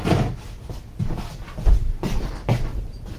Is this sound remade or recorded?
recorded